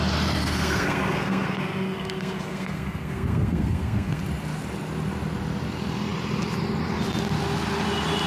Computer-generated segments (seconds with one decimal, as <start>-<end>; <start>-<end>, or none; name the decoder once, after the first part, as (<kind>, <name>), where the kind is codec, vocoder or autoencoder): 0.4-4.2 (codec, SNAC)